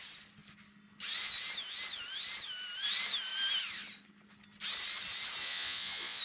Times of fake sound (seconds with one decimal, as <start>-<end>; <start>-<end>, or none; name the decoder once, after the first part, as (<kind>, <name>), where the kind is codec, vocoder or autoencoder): 5.4-6.2 (vocoder, Vocos)